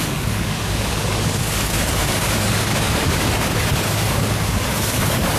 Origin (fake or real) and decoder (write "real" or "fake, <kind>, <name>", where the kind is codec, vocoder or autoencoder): fake, codec, DAC